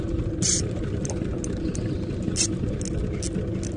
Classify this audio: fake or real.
real